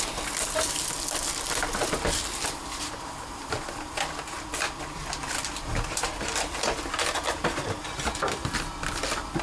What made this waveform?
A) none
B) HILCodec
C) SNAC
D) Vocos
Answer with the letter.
A